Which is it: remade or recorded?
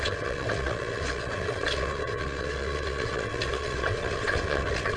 remade